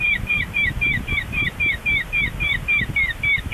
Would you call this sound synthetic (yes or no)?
no